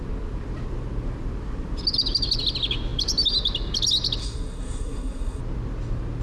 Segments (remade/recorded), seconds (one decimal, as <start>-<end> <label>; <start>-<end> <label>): 0.0-4.2 recorded; 4.2-5.4 remade; 5.4-6.2 recorded